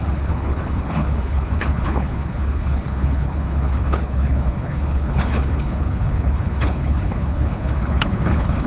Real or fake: fake